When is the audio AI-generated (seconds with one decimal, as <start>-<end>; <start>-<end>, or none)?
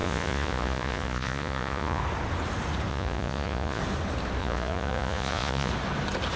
0.0-2.0; 2.9-3.8; 4.4-5.7